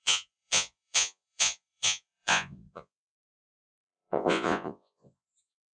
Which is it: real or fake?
fake